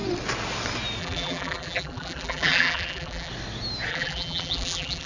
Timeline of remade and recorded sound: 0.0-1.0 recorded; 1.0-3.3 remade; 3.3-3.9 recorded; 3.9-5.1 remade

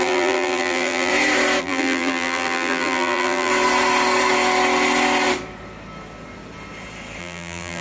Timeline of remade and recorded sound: 0.0-1.1 remade; 1.1-1.6 recorded; 1.6-3.5 remade; 3.5-7.2 recorded; 7.2-7.8 remade